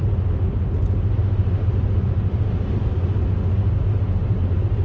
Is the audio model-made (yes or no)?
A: no